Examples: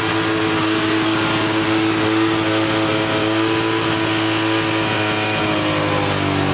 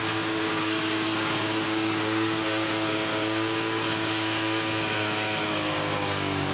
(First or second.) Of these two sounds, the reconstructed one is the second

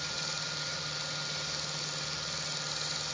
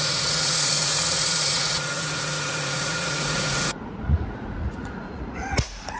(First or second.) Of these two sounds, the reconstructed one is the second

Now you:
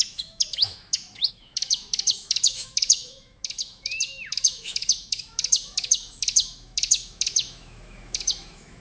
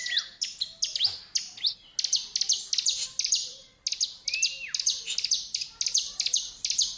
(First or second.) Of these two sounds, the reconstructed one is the first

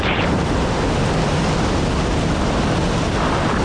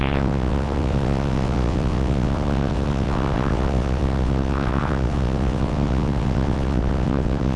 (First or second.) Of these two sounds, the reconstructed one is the second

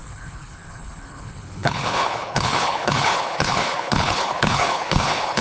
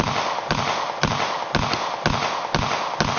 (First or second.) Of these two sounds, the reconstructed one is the first